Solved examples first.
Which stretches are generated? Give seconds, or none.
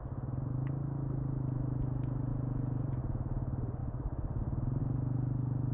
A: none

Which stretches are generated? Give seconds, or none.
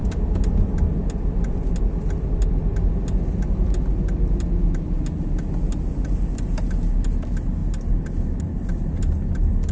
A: none